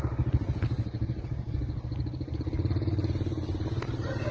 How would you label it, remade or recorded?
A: remade